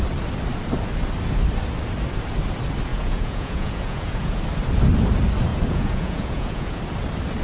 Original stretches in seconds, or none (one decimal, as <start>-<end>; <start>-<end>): 0.0-2.9; 4.4-5.5; 6.8-7.4